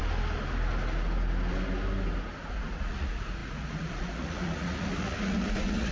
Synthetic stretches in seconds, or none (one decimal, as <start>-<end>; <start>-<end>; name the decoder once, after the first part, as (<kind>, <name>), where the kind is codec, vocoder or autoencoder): 2.5-5.9 (vocoder, Vocos)